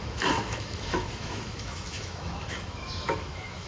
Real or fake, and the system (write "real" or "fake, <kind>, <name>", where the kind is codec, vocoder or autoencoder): fake, autoencoder, DAC-VAE